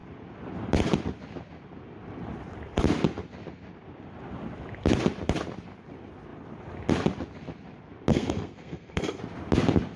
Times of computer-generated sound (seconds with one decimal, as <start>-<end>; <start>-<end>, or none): 8.1-9.2